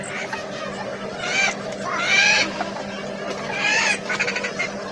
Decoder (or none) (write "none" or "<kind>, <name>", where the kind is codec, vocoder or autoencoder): none